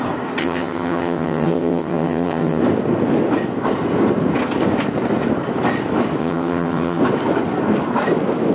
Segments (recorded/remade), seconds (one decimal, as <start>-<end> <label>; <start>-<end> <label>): 0.0-0.4 recorded; 0.4-2.6 remade; 2.6-6.2 recorded; 6.2-7.0 remade; 7.0-8.5 recorded